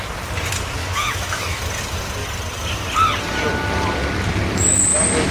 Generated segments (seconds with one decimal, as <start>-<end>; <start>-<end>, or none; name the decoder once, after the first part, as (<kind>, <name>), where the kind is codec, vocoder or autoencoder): 0.8-1.6 (autoencoder, DAC-VAE)